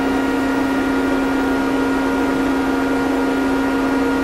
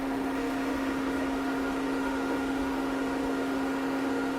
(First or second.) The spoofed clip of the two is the second